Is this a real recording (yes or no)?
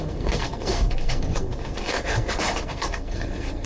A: no